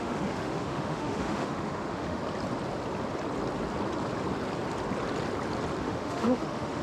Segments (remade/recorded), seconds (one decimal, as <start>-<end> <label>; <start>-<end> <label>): 0.0-2.2 remade; 2.2-5.8 recorded; 5.8-6.8 remade